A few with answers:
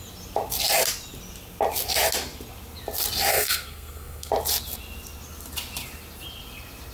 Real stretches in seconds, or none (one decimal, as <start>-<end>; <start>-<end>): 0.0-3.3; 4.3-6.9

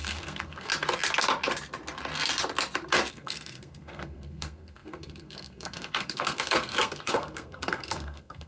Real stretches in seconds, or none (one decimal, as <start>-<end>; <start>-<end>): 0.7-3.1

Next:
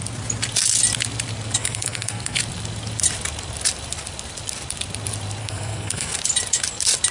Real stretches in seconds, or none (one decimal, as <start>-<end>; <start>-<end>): 0.0-1.6; 2.4-5.4; 6.2-7.1